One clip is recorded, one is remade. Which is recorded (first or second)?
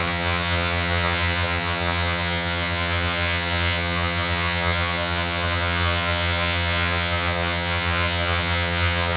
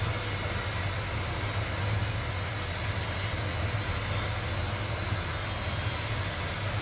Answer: second